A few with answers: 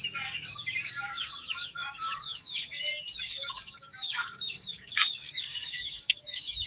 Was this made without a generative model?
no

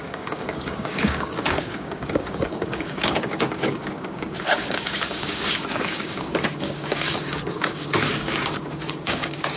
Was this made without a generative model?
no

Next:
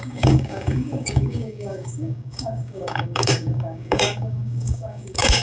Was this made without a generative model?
no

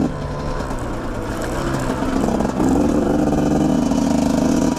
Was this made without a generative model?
yes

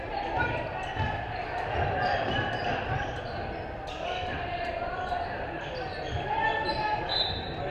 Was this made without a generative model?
yes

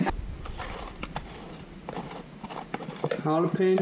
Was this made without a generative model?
yes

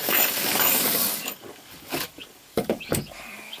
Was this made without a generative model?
no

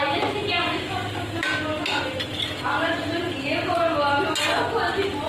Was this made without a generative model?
yes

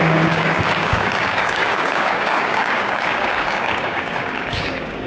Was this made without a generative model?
no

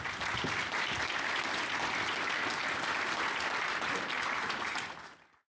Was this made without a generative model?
yes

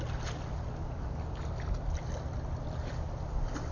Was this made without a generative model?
yes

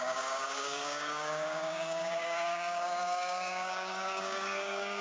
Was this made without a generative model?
no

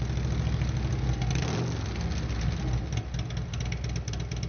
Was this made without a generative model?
yes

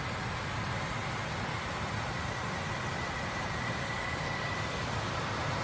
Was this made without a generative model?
yes